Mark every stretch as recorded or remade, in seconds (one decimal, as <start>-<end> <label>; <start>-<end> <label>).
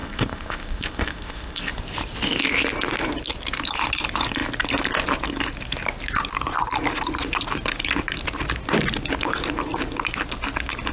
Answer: 0.0-1.7 remade; 1.7-10.9 recorded